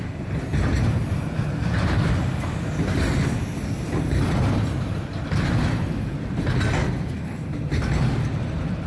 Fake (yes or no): no